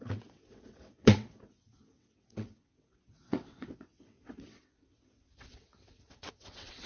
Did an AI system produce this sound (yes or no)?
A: yes